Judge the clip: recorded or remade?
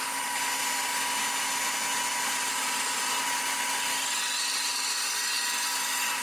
recorded